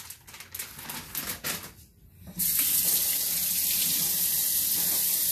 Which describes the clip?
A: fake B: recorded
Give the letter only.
B